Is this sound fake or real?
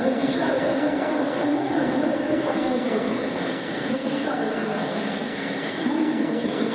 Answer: fake